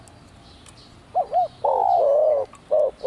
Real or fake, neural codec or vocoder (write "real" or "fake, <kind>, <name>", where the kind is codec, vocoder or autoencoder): real